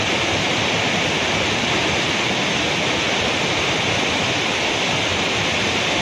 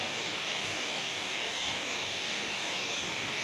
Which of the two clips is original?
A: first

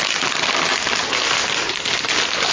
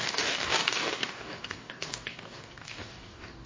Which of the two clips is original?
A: first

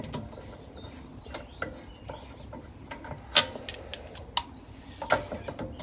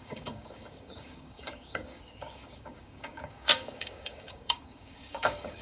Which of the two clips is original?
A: first